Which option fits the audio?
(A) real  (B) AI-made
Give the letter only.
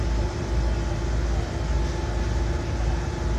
A